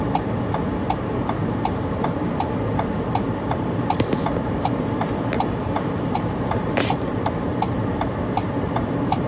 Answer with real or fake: fake